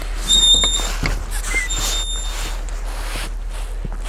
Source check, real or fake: real